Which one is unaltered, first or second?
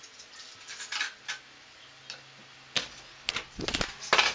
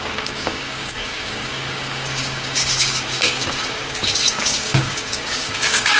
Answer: first